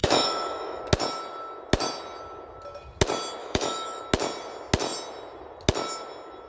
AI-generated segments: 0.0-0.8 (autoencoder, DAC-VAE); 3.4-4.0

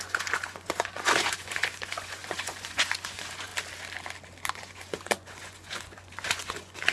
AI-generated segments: 0.0-3.5 (vocoder, Vocos); 4.5-6.9

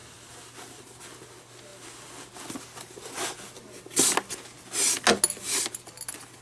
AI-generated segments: 0.0-1.0 (vocoder, BigVGAN v2)

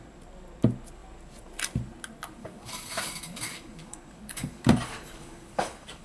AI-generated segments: 2.4-6.0 (codec, DAC)

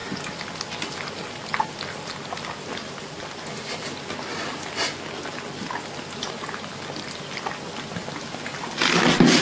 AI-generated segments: none

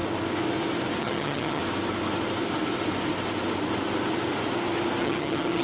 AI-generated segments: 1.0-1.6 (vocoder, HiFi-GAN); 5.0-5.6

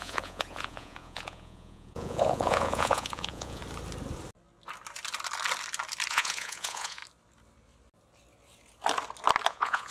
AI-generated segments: 0.0-3.6 (vocoder, Vocos); 6.1-7.0; 9.5-9.9